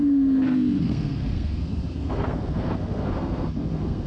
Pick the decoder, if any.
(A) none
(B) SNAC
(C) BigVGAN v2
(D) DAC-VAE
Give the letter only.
B